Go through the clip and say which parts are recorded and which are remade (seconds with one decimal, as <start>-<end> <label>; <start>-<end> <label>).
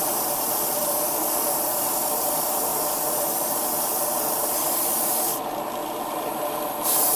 0.0-7.2 recorded